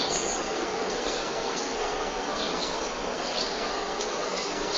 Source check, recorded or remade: remade